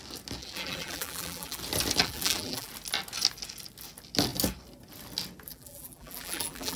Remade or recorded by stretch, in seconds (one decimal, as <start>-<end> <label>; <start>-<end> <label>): 0.0-0.4 recorded; 0.4-1.6 remade; 1.6-2.0 recorded; 2.0-2.7 remade; 2.7-5.5 recorded; 5.5-6.8 remade